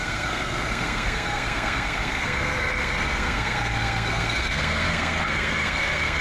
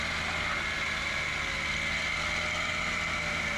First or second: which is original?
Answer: second